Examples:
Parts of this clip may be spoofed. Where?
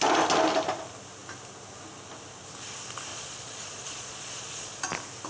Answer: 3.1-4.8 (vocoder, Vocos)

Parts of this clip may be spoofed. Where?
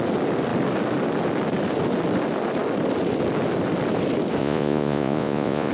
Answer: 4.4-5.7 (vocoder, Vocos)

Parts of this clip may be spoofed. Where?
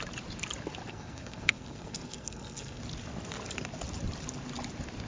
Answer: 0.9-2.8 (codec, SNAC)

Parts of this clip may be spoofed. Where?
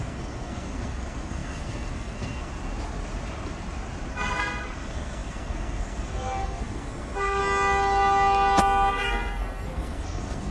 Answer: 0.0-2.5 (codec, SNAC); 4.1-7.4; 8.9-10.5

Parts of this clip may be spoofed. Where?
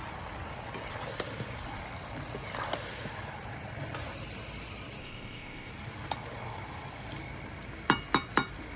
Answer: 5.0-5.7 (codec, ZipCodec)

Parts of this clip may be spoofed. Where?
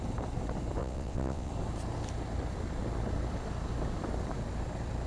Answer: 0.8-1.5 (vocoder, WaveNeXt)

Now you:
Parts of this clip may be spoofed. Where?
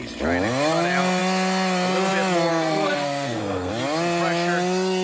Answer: 2.5-3.7 (codec, SNAC)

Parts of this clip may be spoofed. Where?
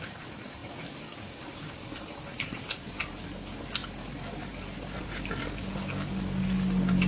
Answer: none